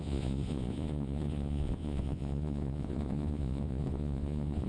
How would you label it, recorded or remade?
remade